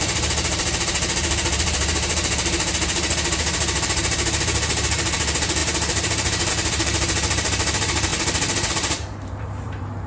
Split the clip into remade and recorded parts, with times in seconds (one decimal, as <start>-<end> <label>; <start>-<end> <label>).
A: 0.0-8.1 remade; 8.1-8.7 recorded; 8.7-10.1 remade